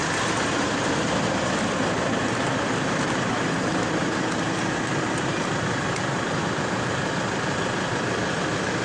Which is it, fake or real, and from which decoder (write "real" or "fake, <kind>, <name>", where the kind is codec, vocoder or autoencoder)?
real